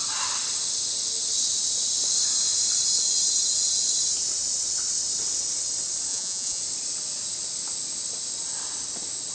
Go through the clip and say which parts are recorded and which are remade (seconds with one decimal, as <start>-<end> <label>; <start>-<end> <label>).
0.0-6.1 recorded; 6.1-6.6 remade; 6.6-9.3 recorded